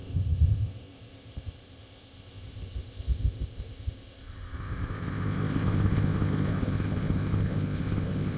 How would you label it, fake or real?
fake